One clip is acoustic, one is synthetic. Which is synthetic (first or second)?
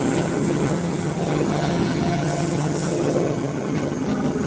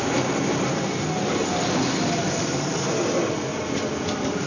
first